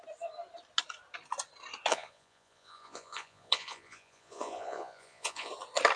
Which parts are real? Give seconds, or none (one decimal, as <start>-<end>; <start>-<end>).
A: 0.0-1.9; 5.5-6.0